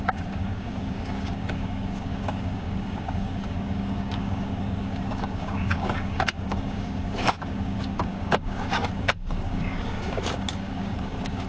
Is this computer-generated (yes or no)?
yes